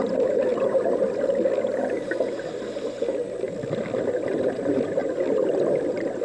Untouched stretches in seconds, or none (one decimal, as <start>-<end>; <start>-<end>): 0.0-6.2